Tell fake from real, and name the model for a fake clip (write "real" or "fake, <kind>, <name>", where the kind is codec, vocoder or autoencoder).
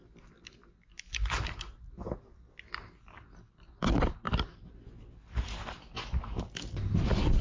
real